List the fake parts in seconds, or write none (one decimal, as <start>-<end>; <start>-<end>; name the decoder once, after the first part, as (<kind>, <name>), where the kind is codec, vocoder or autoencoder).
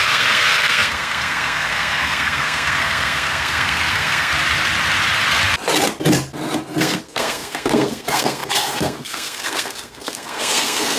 0.0-4.3 (codec, SNAC); 6.8-11.0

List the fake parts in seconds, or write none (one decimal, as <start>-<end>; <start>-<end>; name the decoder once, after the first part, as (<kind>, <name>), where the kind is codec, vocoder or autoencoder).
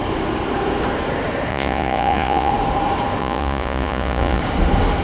1.5-2.5 (vocoder, Vocos); 3.2-4.4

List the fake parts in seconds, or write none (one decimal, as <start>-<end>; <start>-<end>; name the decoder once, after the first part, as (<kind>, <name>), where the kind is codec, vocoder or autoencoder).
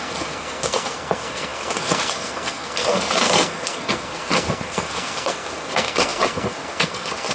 0.0-7.3 (codec, SNAC)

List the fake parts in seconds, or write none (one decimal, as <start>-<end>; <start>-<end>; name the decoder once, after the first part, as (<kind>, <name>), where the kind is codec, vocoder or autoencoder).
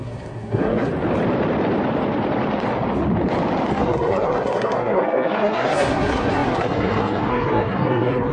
0.0-0.9 (codec, SNAC); 3.7-8.3